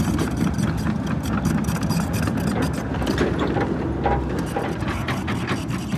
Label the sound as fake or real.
real